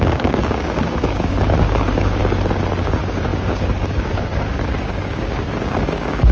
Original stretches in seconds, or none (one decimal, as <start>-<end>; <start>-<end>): 2.2-2.8